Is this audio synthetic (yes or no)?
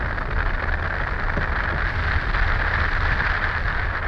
no